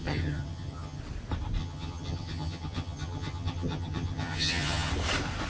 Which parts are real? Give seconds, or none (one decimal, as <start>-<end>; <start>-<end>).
1.0-1.6; 4.9-5.5